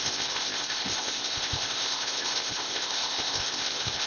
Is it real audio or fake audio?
fake